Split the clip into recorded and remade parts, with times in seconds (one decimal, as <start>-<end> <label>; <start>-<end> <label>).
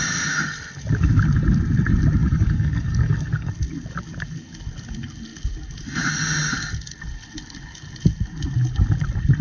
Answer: 0.0-2.2 recorded; 2.2-3.5 remade; 3.5-9.4 recorded